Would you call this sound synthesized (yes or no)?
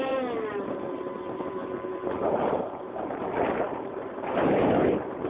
yes